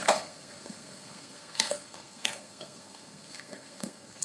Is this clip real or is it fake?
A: fake